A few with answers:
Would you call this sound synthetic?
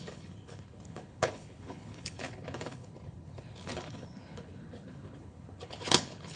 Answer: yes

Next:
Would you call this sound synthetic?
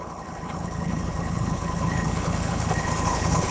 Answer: yes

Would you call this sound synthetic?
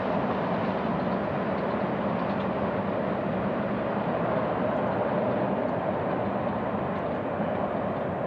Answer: no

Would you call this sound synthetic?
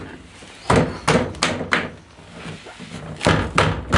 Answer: no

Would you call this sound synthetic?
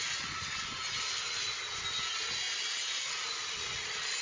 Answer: no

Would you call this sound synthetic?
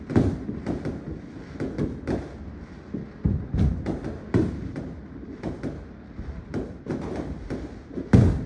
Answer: no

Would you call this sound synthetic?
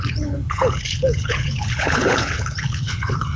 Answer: yes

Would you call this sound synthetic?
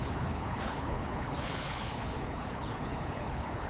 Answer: yes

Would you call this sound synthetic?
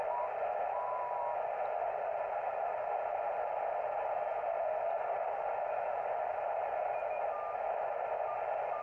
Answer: no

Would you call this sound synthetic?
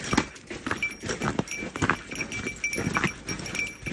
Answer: no